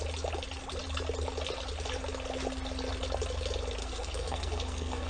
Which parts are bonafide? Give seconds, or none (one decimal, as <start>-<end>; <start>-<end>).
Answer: 0.0-3.8